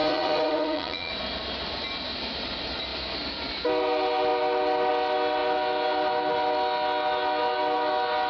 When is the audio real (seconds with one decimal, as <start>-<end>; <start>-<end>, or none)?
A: 1.1-8.3